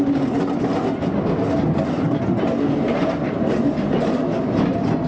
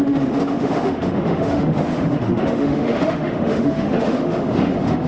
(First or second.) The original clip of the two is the first